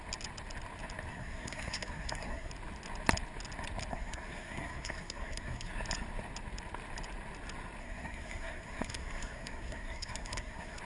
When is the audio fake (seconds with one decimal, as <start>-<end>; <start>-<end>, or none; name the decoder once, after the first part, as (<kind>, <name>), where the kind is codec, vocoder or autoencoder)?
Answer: 1.1-2.5 (codec, SNAC); 3.9-5.7; 7.8-10.8